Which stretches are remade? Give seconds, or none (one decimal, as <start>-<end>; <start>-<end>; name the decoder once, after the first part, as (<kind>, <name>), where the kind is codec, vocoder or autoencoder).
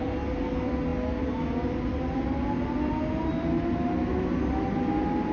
none